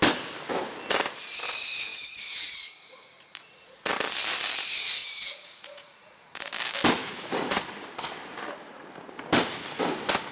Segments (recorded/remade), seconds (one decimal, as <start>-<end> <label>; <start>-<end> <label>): 0.0-1.9 recorded; 1.9-3.9 remade; 3.9-5.0 recorded; 5.0-6.5 remade; 6.5-7.0 recorded; 7.0-7.7 remade; 7.7-10.3 recorded